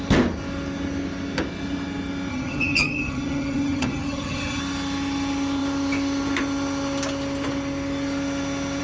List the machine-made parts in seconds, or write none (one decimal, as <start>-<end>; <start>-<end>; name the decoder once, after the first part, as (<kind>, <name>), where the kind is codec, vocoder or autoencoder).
2.3-4.6 (vocoder, HiFi-GAN)